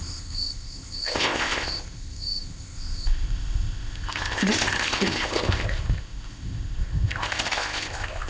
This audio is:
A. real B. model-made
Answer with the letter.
B